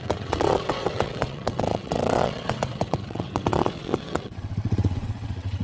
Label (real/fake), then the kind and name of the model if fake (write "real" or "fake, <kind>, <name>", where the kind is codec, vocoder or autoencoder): fake, vocoder, WaveNeXt